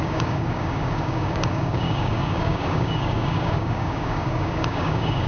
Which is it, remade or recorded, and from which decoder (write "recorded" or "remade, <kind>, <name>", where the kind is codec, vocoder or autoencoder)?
remade, codec, DAC